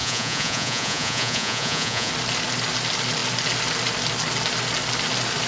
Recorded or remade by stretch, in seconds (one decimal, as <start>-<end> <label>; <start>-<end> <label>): 0.0-2.1 remade; 2.1-5.5 recorded